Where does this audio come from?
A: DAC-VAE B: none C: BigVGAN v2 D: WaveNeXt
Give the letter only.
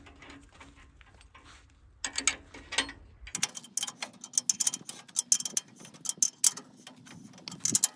B